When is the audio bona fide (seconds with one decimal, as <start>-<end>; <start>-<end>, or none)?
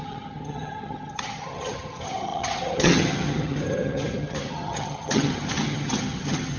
none